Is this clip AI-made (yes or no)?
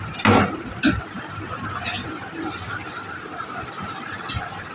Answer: no